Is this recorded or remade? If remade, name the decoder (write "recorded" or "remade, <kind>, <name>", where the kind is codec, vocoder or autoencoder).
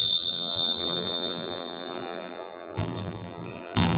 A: remade, vocoder, BigVGAN v2